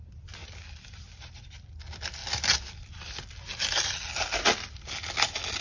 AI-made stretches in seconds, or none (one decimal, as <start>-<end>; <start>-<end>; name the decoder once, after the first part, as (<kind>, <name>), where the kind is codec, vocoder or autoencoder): none